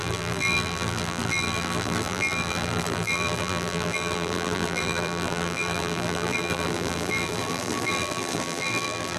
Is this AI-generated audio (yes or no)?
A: yes